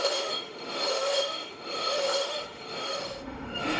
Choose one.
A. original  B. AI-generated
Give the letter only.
B